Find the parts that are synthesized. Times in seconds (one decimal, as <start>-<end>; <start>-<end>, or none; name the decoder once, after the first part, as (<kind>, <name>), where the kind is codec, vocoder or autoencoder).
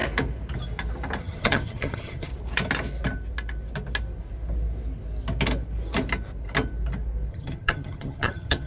1.2-2.3 (vocoder, HiFi-GAN); 7.3-8.7